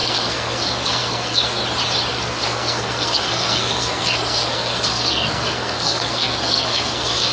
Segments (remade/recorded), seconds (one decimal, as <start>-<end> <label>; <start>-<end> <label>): 0.0-1.6 remade; 1.6-2.1 recorded; 2.1-7.3 remade